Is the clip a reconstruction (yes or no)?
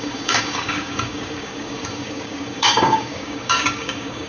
yes